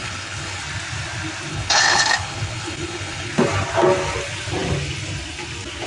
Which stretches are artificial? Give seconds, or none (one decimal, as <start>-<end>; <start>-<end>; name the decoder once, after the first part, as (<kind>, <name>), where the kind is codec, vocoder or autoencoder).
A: 0.0-0.6 (codec, HILCodec); 1.5-3.3